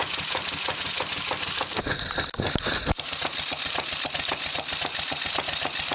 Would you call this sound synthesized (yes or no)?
no